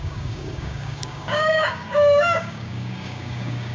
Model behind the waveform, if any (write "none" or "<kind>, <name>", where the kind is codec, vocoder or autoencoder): codec, DAC